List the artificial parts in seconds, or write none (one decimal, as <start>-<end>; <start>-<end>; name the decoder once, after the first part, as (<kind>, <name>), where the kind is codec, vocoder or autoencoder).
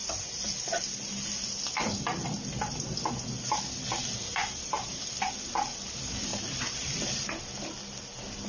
4.4-5.1 (vocoder, BigVGAN v2); 6.3-7.4